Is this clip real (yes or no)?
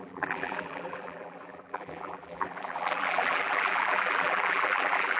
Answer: no